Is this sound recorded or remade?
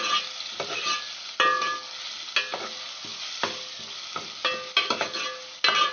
recorded